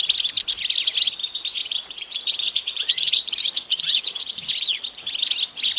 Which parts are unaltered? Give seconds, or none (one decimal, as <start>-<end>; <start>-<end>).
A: 0.0-1.6; 5.1-5.8